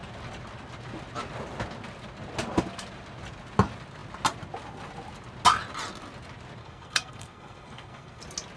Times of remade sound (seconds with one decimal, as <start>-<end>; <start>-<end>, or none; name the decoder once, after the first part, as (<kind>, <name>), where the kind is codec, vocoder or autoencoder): 6.6-8.2 (codec, SNAC)